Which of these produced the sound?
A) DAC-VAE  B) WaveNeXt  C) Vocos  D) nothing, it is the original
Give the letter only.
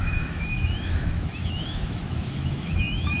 A